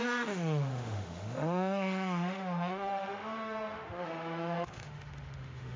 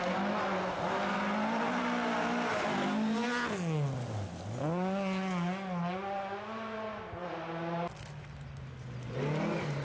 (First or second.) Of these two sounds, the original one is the second